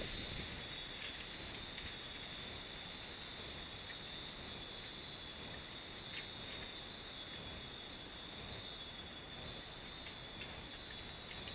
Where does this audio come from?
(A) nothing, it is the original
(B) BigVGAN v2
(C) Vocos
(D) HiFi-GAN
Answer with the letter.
A